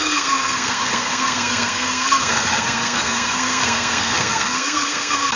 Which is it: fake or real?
fake